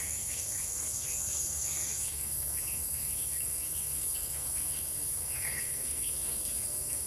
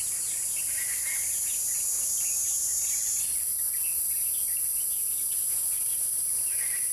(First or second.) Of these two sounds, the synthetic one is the first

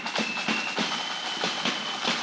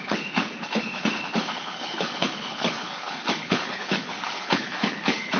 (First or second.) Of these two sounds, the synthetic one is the second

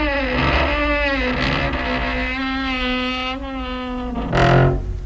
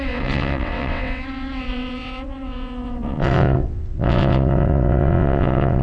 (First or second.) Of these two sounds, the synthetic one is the second